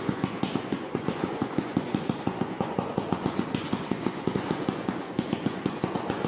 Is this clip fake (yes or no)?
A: yes